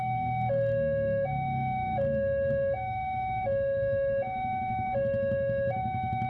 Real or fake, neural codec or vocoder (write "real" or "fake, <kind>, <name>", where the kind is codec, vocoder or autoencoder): fake, codec, DAC